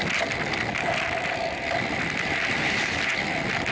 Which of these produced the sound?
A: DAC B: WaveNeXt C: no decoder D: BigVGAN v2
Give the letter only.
C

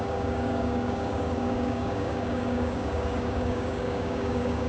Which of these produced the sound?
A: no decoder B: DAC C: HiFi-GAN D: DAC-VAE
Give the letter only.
B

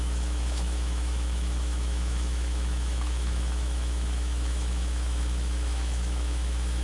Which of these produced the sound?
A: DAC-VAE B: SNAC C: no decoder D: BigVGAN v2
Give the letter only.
A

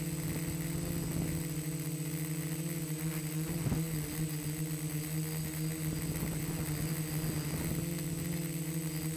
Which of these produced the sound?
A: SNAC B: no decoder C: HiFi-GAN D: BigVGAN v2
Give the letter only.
B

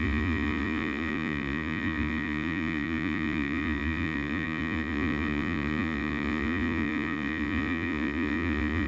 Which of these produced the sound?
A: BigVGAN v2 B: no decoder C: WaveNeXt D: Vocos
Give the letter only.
D